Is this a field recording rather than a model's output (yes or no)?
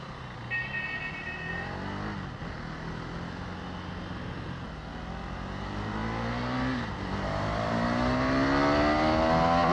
yes